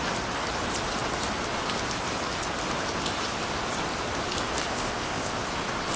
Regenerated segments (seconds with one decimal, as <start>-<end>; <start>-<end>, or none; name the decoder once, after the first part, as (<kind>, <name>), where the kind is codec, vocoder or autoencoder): 4.7-5.4 (codec, ZipCodec)